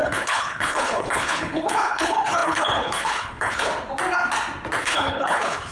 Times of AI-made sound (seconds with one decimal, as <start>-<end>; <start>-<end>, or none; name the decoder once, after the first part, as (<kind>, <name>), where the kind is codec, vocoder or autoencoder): 0.0-3.7 (codec, HILCodec); 4.8-5.7